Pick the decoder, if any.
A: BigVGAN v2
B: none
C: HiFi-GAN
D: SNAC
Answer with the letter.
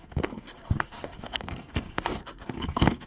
D